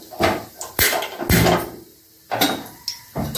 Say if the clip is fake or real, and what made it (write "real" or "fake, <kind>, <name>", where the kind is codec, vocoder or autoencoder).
real